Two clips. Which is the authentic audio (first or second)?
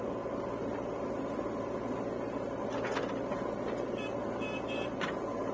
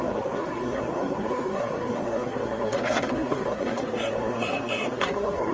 first